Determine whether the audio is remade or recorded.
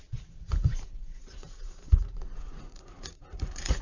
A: remade